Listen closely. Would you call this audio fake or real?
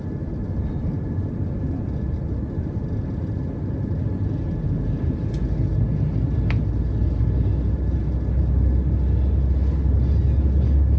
real